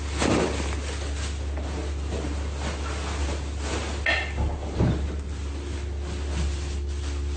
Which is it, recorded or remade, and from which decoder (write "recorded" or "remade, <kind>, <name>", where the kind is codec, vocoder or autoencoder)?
recorded